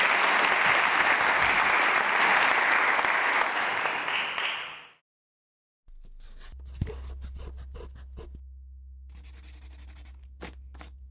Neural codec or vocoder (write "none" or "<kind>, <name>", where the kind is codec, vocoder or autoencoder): none